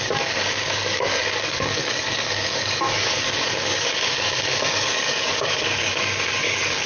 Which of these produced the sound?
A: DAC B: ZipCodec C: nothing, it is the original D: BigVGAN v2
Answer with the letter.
A